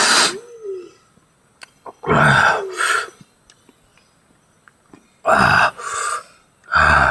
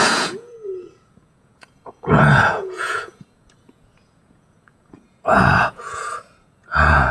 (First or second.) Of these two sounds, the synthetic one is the second